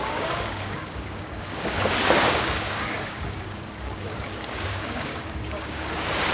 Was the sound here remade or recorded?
remade